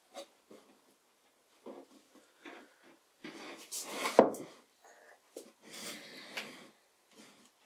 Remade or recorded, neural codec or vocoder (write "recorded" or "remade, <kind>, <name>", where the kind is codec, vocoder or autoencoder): recorded